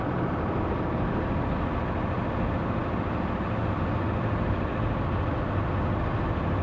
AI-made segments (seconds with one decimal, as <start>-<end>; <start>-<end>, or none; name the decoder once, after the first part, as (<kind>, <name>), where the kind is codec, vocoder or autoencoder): none